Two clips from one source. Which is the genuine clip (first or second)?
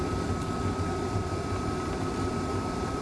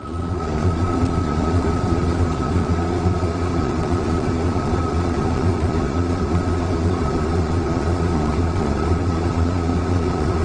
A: first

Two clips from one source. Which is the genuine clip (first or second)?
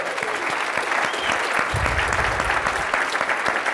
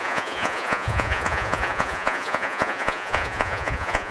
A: first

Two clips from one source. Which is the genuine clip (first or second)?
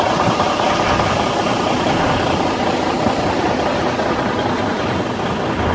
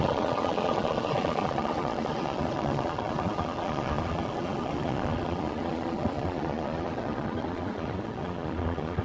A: first